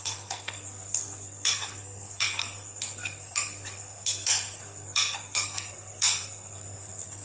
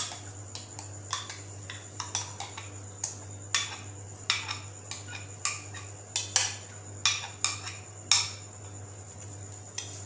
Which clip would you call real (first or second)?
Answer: second